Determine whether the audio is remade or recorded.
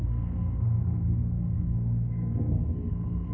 remade